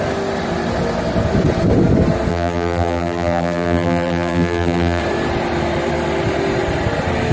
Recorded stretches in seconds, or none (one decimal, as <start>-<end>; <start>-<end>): 0.0-2.3; 5.0-7.3